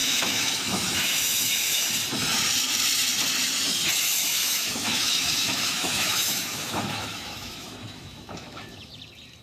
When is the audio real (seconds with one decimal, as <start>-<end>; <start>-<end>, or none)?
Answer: 1.9-4.3; 8.9-9.4